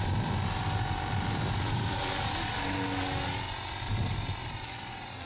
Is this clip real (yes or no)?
yes